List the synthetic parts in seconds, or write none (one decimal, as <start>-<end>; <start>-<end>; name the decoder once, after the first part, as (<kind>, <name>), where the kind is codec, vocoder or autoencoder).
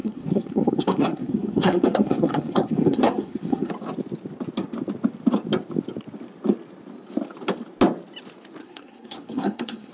0.0-3.7 (codec, SNAC); 8.6-9.9